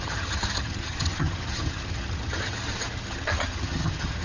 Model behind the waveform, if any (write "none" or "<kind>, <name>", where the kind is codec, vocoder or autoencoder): vocoder, HiFi-GAN